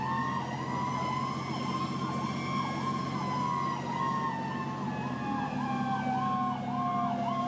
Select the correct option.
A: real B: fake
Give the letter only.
A